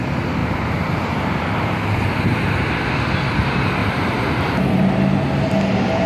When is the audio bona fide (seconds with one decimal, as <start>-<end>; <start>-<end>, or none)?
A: 0.0-0.4; 2.7-3.8; 4.9-6.1